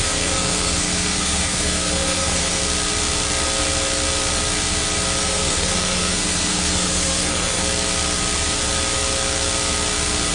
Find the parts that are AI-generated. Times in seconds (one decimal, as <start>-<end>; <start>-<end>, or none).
0.0-2.6; 5.2-7.6